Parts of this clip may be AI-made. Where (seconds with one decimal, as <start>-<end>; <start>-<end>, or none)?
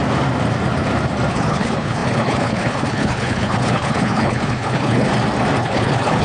1.3-5.1; 5.6-6.2